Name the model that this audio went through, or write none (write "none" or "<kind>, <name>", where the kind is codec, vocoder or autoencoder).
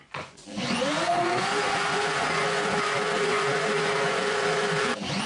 vocoder, Vocos